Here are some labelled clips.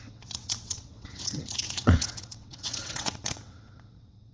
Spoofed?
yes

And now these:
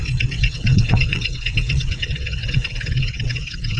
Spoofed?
yes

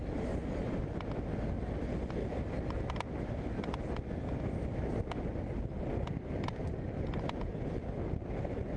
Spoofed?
no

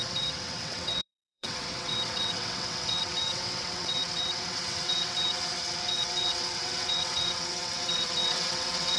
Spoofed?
yes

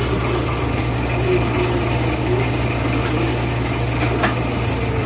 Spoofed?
no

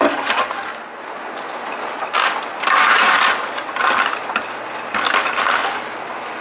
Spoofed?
no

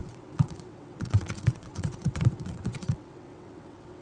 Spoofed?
yes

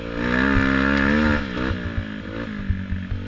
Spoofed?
no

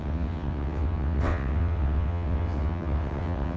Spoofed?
yes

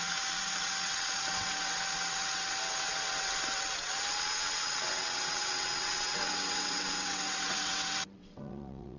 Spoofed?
yes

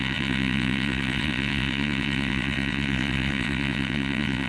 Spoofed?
yes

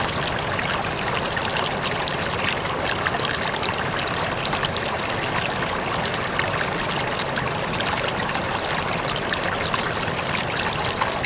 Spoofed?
no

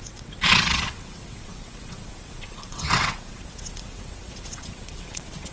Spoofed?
yes